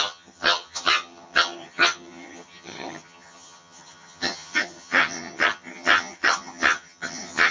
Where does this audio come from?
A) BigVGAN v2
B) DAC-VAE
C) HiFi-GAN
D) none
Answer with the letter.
C